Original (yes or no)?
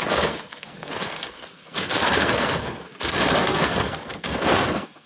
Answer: no